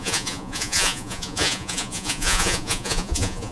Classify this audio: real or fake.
fake